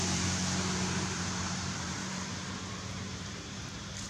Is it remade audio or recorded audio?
remade